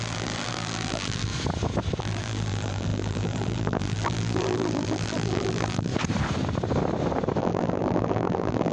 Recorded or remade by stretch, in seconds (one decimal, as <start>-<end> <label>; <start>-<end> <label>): 0.0-1.3 remade; 1.3-2.0 recorded; 2.0-5.9 remade; 5.9-7.4 recorded; 7.4-8.7 remade